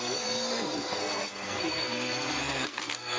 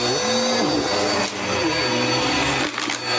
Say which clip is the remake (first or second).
first